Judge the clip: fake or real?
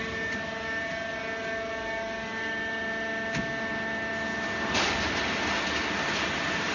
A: real